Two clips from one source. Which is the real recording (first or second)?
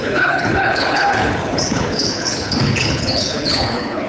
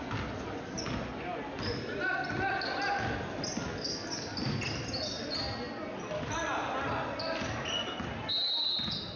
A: second